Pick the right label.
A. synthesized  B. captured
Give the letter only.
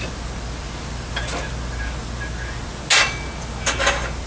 B